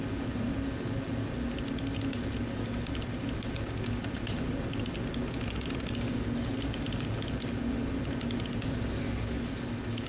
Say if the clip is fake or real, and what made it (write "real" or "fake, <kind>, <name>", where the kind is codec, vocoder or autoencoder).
real